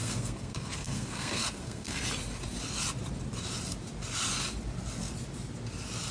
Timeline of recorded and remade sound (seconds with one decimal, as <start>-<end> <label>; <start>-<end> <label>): 0.0-2.0 remade; 2.0-6.1 recorded